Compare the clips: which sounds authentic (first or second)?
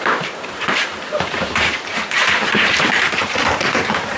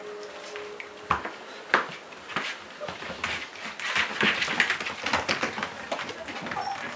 second